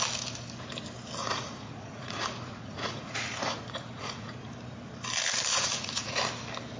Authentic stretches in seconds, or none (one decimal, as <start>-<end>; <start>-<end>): 0.0-1.2; 4.5-5.5; 6.2-6.8